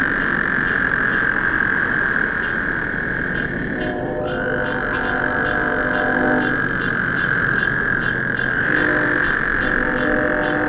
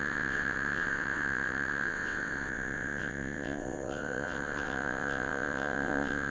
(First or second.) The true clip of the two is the first